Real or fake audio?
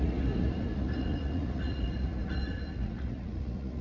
fake